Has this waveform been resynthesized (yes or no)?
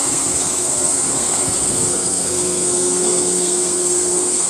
yes